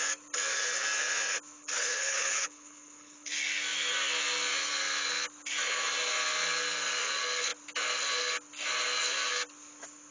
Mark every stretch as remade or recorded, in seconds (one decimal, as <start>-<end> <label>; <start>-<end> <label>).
0.0-1.6 recorded; 1.6-3.3 remade; 3.3-10.1 recorded